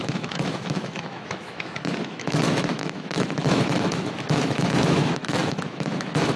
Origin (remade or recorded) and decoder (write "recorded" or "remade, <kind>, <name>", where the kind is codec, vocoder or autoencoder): remade, autoencoder, DAC-VAE